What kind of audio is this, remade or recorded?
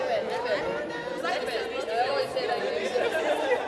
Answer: recorded